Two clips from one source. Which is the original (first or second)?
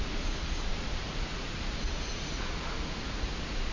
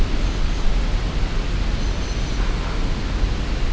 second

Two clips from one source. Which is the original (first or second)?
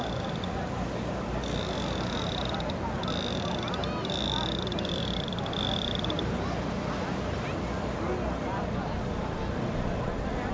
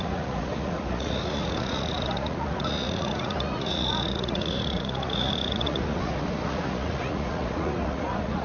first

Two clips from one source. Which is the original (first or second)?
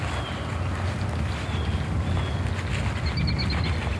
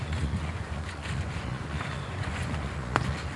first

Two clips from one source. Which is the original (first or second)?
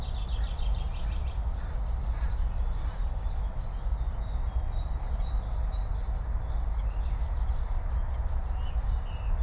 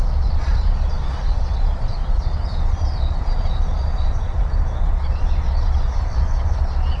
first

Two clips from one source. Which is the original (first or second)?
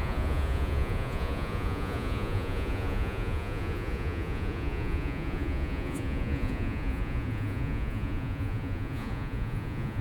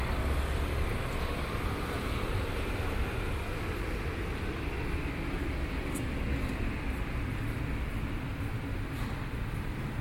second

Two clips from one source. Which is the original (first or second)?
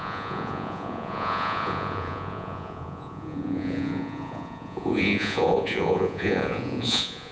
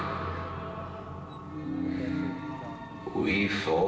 second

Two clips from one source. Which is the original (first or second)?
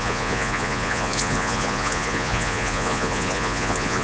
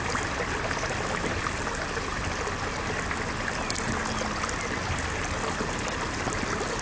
second